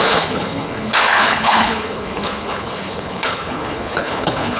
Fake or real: fake